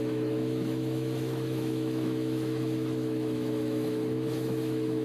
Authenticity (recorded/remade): remade